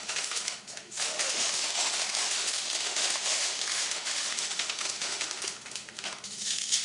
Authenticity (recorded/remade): remade